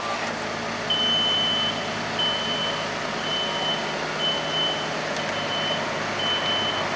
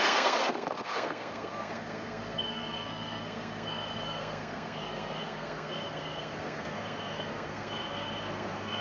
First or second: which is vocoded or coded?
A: second